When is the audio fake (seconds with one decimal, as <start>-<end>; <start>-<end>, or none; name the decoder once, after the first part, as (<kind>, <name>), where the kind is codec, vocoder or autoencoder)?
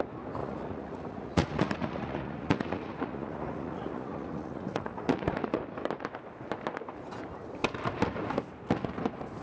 0.4-5.6 (vocoder, Vocos)